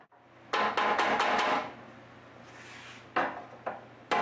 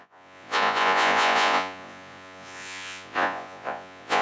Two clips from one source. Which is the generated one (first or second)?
second